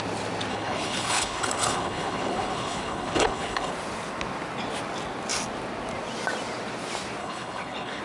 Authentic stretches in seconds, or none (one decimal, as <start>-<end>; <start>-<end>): 0.0-0.5; 3.7-7.2